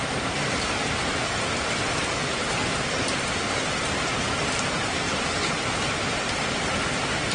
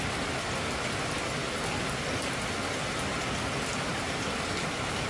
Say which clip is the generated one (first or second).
first